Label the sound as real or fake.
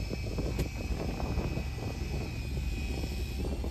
real